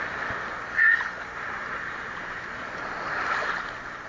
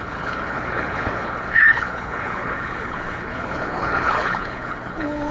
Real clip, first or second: first